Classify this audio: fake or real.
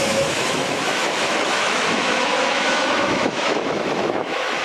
fake